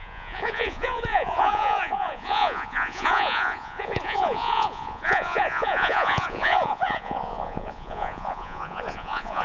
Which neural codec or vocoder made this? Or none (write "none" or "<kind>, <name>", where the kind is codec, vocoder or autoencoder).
vocoder, Vocos